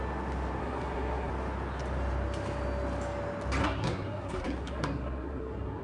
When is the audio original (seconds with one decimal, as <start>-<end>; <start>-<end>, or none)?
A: 0.0-0.6; 1.3-3.6